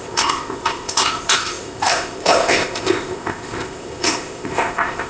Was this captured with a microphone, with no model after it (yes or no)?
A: no